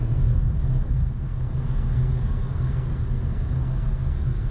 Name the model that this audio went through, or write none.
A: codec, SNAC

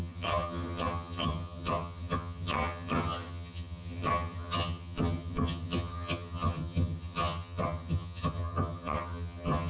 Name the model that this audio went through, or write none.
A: vocoder, HiFi-GAN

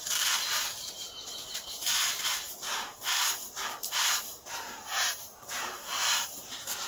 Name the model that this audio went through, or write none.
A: vocoder, BigVGAN v2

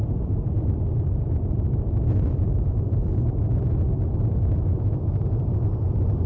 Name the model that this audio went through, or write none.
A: vocoder, BigVGAN v2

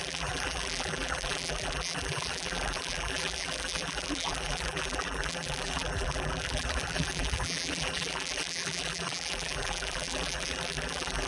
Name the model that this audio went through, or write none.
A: vocoder, BigVGAN v2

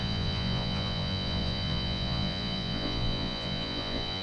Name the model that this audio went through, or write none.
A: vocoder, Vocos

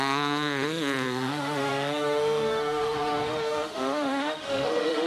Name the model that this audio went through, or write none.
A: autoencoder, DAC-VAE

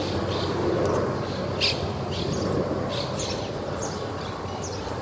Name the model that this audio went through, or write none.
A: none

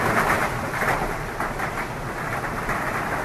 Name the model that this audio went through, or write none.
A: vocoder, BigVGAN v2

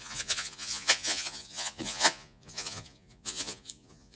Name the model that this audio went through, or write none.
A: vocoder, Vocos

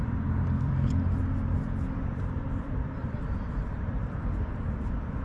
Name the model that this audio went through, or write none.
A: vocoder, BigVGAN v2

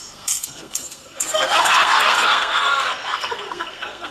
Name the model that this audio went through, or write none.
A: codec, SNAC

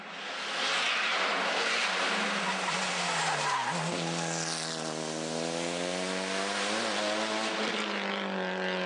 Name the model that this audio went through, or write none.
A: none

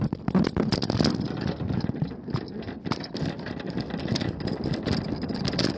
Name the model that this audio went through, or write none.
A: none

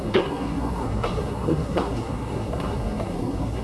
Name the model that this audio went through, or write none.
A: codec, SNAC